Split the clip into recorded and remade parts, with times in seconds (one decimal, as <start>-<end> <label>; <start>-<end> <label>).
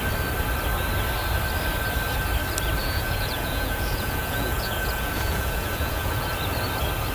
0.0-2.8 recorded; 2.8-6.3 remade; 6.3-7.1 recorded